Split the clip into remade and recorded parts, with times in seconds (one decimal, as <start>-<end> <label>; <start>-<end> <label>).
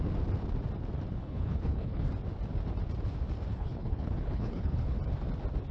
0.0-1.2 recorded; 1.2-2.1 remade; 2.1-3.5 recorded; 3.5-5.0 remade; 5.0-5.7 recorded